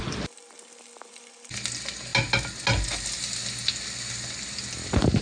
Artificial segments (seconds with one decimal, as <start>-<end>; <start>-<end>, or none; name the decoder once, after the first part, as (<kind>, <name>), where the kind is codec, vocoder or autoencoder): none